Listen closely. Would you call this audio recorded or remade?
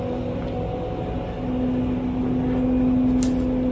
recorded